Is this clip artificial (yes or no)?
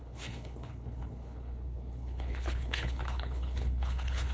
yes